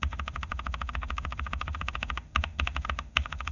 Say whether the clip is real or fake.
fake